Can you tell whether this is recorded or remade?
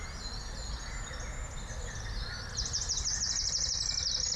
recorded